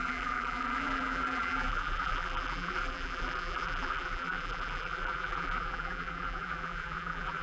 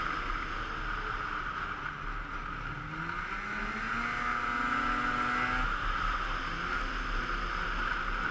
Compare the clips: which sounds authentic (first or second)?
second